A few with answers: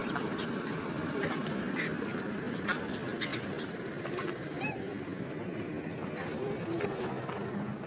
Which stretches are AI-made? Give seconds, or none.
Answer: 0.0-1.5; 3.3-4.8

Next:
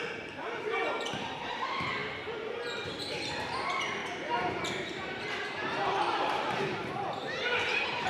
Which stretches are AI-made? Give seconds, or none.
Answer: 0.0-4.0; 4.5-8.1

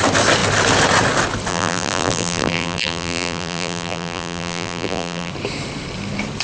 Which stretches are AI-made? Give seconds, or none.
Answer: 1.5-5.3

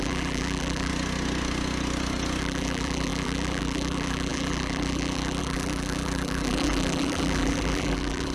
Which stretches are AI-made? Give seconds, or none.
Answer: 0.0-0.9; 2.4-8.3